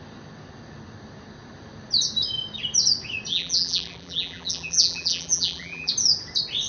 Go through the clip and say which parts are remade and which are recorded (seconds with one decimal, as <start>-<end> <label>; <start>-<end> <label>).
0.0-3.3 recorded; 3.3-5.9 remade; 5.9-6.7 recorded